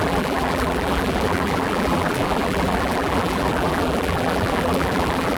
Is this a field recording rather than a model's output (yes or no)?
no